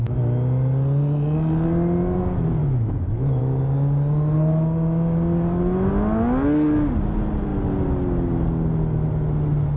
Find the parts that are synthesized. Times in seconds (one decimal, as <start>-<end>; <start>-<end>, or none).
2.6-3.4